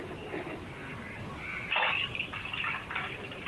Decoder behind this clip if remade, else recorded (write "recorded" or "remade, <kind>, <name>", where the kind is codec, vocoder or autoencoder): recorded